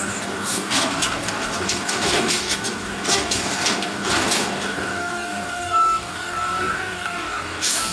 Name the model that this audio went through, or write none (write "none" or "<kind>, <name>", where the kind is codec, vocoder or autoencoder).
codec, DAC